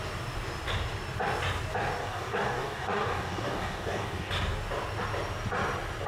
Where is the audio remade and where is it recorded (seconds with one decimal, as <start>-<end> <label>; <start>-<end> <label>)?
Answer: 0.0-2.0 recorded; 2.0-4.3 remade; 4.3-6.1 recorded